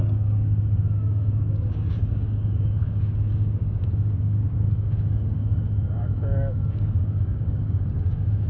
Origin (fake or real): fake